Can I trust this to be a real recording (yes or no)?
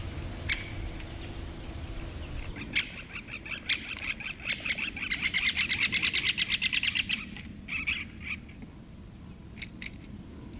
yes